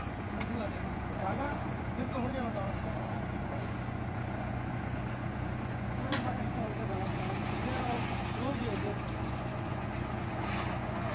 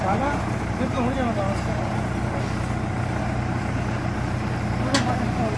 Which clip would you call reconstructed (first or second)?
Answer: first